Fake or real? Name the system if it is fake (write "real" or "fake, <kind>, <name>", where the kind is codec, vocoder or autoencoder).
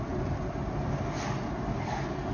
real